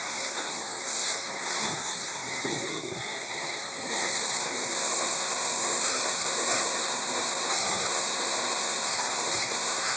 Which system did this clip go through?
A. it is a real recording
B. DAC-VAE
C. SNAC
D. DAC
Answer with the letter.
C